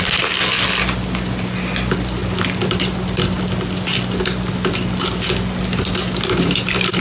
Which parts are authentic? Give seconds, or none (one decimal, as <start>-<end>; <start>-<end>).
0.0-7.0